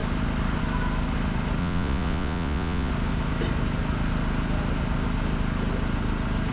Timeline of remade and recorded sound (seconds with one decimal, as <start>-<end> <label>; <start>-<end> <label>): 0.0-1.6 recorded; 1.6-2.9 remade; 2.9-6.5 recorded